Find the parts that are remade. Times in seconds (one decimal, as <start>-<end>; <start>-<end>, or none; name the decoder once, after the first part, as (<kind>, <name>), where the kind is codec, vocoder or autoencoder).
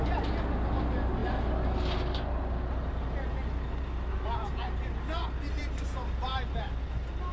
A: none